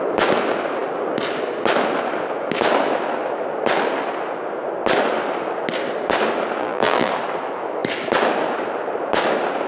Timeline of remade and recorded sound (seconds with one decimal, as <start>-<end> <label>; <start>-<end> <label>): 0.0-6.6 recorded; 6.6-7.1 remade; 7.1-9.7 recorded